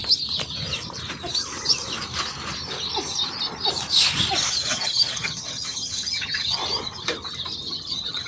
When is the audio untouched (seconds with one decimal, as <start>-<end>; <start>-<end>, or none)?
0.0-4.5; 6.6-7.7